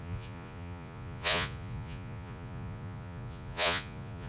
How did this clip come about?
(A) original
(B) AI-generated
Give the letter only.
B